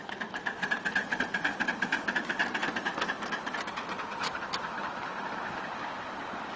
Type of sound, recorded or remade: remade